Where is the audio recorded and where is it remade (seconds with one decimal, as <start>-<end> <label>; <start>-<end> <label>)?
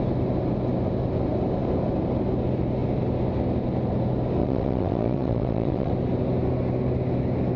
0.0-4.4 recorded; 4.4-5.9 remade; 5.9-7.6 recorded